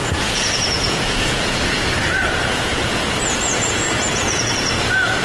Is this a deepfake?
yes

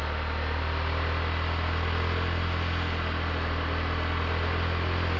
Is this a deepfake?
no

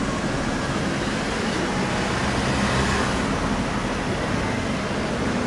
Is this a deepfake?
no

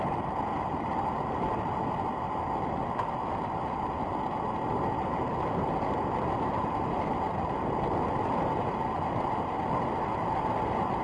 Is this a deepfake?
no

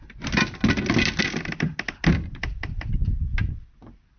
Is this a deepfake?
no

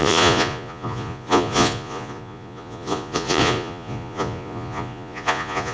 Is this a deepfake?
yes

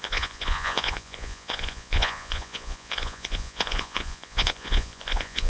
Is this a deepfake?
yes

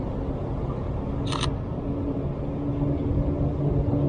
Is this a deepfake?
no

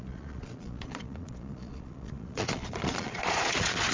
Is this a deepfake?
yes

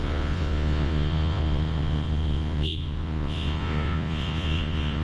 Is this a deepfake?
yes